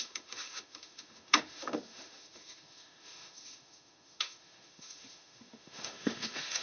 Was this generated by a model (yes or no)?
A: yes